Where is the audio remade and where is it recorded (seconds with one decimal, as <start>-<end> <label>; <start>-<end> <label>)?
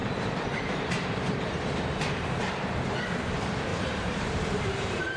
0.0-3.0 remade; 3.0-3.7 recorded; 3.7-5.2 remade